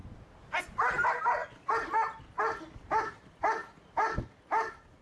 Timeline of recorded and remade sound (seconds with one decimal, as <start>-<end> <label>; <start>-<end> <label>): 0.0-5.0 recorded